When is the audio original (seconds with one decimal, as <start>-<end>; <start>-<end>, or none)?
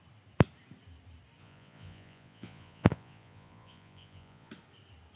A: 0.0-1.4; 4.5-5.2